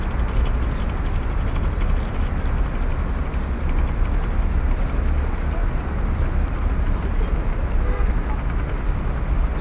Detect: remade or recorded recorded